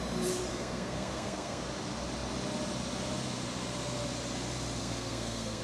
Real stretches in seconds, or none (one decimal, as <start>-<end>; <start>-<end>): 0.0-0.5; 1.6-4.8